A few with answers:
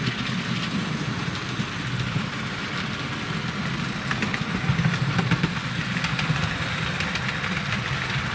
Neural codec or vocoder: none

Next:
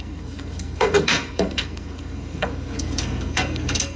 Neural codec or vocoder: codec, SNAC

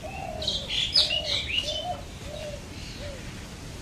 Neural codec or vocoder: none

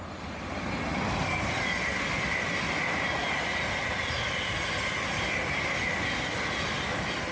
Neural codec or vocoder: none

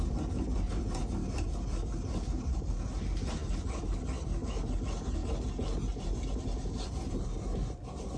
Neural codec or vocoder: none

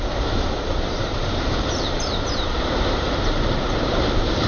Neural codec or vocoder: vocoder, BigVGAN v2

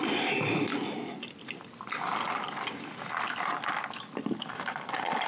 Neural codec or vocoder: none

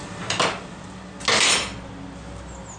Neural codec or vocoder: none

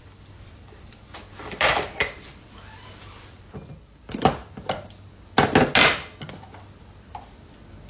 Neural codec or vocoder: none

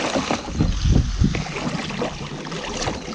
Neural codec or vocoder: none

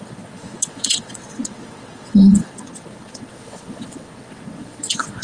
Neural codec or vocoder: vocoder, WaveNeXt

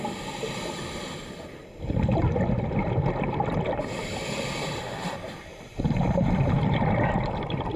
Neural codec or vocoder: vocoder, BigVGAN v2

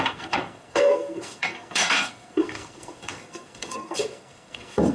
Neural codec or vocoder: codec, SNAC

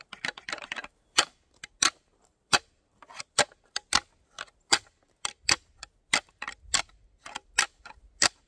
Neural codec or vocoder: none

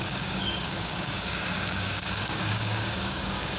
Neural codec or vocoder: codec, DAC